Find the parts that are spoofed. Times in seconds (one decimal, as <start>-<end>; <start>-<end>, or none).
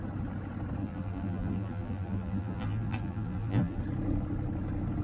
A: 0.8-3.8